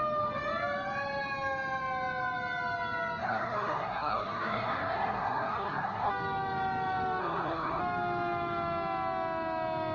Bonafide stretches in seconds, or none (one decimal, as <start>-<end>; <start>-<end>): 0.0-3.2; 6.1-7.2; 7.8-9.9